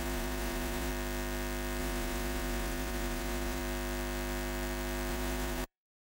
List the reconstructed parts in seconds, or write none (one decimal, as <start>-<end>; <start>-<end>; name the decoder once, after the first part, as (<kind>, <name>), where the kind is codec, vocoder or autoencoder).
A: 0.0-0.9 (vocoder, Vocos); 1.8-3.6; 5.1-6.1

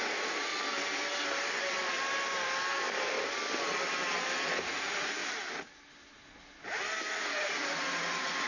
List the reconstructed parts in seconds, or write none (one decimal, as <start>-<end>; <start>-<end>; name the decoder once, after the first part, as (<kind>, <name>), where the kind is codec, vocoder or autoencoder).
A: 0.0-0.5 (vocoder, Vocos); 4.4-5.2; 7.2-8.5

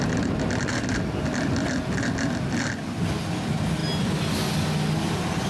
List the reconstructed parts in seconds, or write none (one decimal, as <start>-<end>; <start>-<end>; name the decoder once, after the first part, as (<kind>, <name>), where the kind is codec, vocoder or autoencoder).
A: none

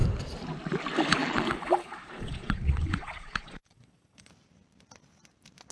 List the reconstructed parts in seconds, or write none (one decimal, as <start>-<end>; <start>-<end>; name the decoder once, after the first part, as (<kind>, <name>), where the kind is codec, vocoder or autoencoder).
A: 1.2-4.3 (vocoder, Vocos)

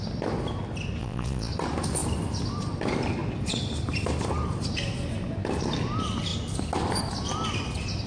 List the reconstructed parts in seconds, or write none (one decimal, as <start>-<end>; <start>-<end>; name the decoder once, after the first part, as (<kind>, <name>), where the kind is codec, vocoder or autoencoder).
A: 1.0-1.5 (vocoder, Vocos)

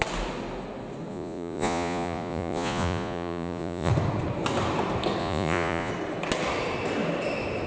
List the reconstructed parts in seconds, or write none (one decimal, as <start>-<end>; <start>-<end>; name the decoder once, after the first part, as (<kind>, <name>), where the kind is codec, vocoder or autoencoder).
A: 1.1-3.9 (vocoder, Vocos); 5.2-5.9

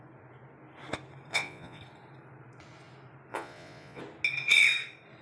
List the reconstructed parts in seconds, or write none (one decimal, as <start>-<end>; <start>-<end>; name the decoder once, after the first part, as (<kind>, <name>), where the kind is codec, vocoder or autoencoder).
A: 1.3-1.8 (vocoder, Vocos); 3.3-4.0